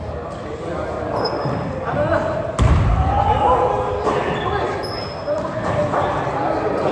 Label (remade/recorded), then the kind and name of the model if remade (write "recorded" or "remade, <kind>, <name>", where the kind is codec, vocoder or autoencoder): recorded